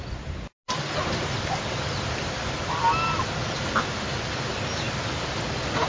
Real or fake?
real